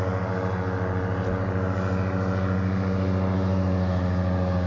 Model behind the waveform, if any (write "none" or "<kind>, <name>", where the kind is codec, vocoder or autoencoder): none